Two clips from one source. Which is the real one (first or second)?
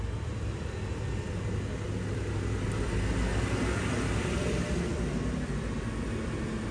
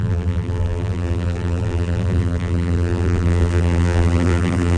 first